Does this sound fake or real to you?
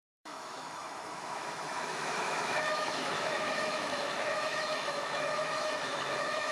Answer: fake